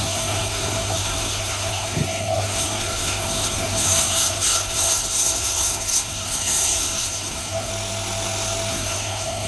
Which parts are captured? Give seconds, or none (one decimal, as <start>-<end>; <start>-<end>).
7.7-8.7